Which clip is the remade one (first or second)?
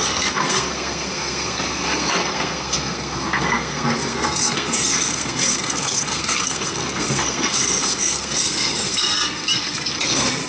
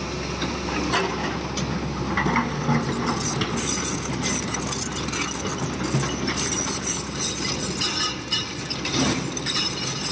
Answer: first